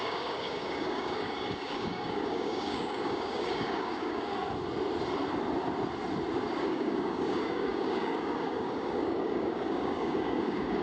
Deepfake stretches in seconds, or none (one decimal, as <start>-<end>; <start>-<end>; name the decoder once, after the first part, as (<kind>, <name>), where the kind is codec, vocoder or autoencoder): 0.0-4.4 (codec, DAC); 6.6-10.8